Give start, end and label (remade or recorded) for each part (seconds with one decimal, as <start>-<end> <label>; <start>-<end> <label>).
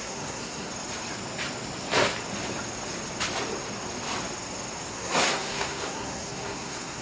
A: 0.0-0.7 remade; 0.7-4.9 recorded; 4.9-7.0 remade